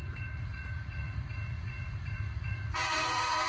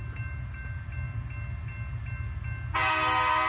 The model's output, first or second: first